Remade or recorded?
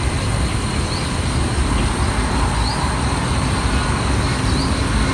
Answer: recorded